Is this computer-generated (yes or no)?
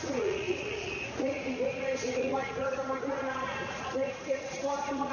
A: yes